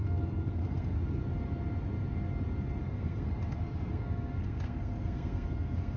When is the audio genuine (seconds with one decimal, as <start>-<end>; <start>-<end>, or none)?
1.2-2.8